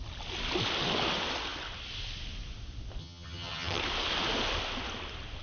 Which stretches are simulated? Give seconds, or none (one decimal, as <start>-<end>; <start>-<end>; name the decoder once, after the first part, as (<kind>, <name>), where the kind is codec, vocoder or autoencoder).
3.0-3.8 (vocoder, HiFi-GAN)